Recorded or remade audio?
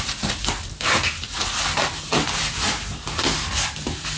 recorded